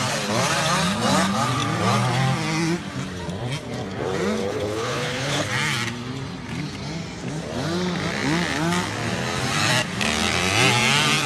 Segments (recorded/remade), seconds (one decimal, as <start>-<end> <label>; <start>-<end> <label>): 0.0-4.4 recorded; 4.4-5.5 remade; 5.5-11.3 recorded